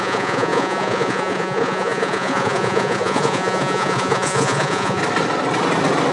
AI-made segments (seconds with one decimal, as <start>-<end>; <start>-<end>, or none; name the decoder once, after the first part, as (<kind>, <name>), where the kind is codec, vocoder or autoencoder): 0.0-5.0 (vocoder, Vocos)